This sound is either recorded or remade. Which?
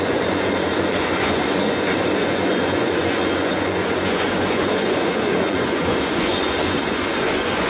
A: remade